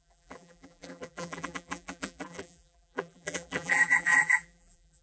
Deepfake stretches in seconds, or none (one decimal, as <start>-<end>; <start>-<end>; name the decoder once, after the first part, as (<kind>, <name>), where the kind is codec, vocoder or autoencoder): 0.0-5.0 (vocoder, BigVGAN v2)